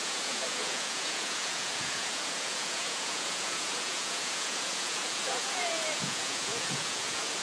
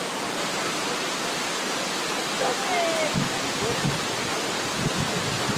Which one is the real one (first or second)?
second